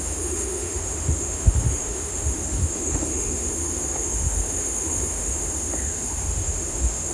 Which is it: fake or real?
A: fake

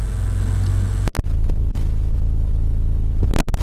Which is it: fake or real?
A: real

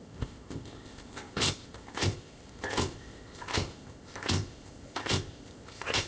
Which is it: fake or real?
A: fake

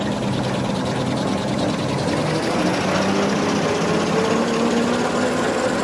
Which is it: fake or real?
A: real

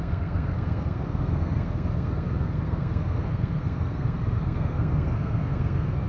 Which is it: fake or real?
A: fake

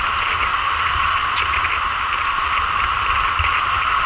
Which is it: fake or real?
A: real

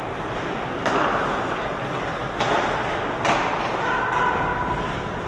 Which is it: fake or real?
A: real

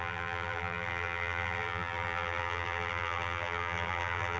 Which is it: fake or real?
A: fake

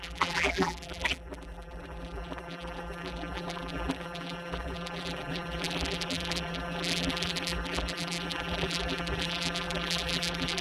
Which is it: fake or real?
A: fake